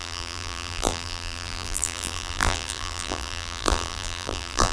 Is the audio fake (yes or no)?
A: yes